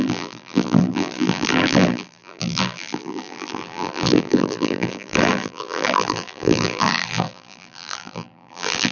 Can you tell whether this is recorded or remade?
remade